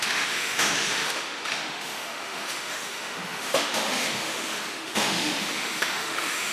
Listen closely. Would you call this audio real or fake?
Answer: fake